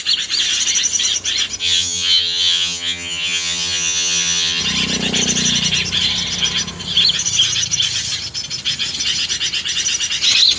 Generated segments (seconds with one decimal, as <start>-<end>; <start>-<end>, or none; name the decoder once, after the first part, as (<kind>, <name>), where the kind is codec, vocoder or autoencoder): 1.6-4.6 (vocoder, HiFi-GAN)